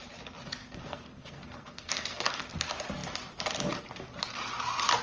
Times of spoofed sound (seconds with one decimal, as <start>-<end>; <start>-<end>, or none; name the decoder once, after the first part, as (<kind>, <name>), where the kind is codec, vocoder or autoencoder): 0.6-2.4 (codec, SNAC)